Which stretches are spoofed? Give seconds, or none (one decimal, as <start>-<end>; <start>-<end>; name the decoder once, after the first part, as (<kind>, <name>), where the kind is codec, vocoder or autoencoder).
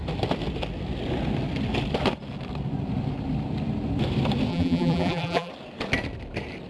4.5-5.5 (vocoder, BigVGAN v2)